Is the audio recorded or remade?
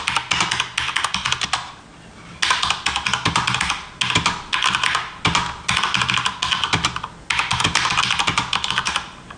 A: recorded